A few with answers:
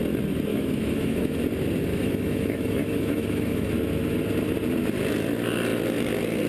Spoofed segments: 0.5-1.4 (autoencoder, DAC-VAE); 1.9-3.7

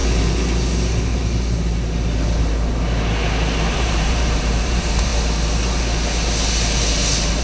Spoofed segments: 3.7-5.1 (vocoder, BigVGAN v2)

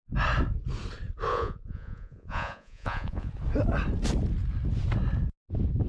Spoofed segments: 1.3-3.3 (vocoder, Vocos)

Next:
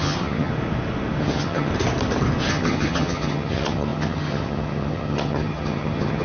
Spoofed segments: 0.0-0.5 (vocoder, HiFi-GAN); 1.2-1.7; 2.5-6.2

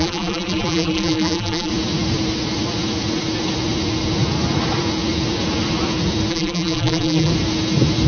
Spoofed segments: 0.0-1.7 (vocoder, BigVGAN v2); 6.3-7.3

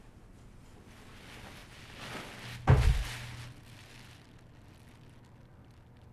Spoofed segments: none

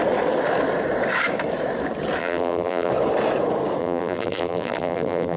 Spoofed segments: 2.2-2.9 (vocoder, BigVGAN v2); 3.8-5.4